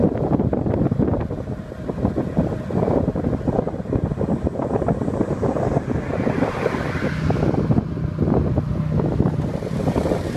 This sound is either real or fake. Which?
real